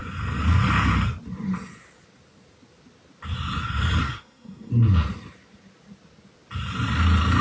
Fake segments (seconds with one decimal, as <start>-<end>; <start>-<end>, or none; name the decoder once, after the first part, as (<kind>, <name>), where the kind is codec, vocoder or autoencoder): 4.0-4.7 (codec, SNAC)